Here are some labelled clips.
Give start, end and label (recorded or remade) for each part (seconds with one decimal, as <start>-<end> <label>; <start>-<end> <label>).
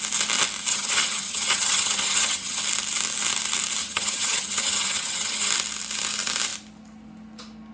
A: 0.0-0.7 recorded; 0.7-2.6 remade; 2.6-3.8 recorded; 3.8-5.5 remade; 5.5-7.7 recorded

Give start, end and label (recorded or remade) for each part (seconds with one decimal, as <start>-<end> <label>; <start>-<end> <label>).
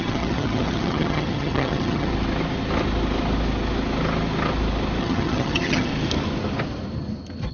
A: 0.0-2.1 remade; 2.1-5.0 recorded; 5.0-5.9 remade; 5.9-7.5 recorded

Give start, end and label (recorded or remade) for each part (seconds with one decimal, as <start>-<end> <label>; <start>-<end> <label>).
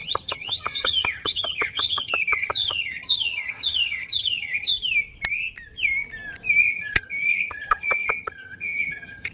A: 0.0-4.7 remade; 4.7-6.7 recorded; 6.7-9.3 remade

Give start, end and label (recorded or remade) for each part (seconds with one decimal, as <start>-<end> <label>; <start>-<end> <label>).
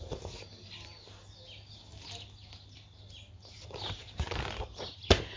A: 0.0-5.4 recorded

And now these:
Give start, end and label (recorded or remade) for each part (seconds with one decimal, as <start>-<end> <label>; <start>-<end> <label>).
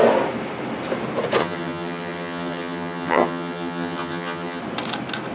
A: 0.0-1.4 recorded; 1.4-4.6 remade; 4.6-5.3 recorded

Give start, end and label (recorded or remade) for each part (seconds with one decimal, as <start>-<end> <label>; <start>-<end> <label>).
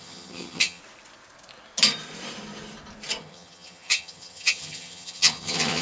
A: 0.0-0.8 remade; 0.8-3.2 recorded; 3.2-5.8 remade